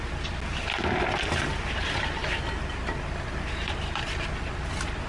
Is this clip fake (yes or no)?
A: no